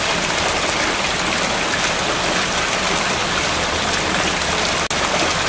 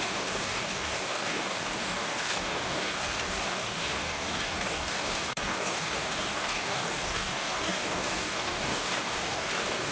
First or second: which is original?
first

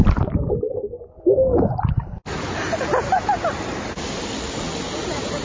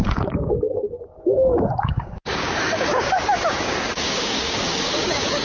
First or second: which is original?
first